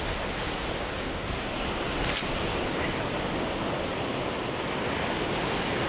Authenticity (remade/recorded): recorded